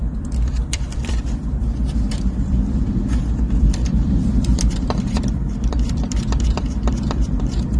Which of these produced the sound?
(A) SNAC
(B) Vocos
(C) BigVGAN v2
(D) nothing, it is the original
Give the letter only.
C